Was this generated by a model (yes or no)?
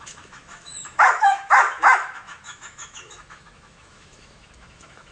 yes